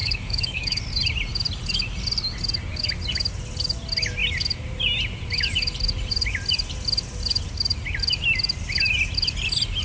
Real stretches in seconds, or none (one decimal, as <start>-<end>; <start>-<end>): 0.8-9.8